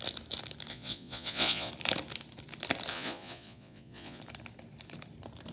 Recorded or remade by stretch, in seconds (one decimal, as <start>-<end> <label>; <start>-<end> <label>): 0.0-0.7 recorded; 0.7-1.7 remade; 1.7-2.9 recorded; 2.9-4.2 remade; 4.2-5.5 recorded

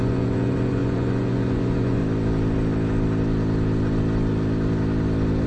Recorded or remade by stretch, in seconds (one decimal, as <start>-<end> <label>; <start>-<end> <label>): 0.0-2.0 remade; 2.0-5.5 recorded